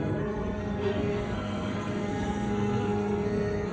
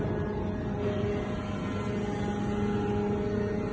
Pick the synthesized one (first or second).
first